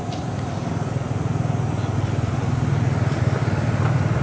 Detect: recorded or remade recorded